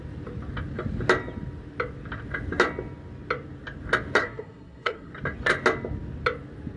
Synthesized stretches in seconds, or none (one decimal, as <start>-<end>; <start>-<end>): 4.2-5.1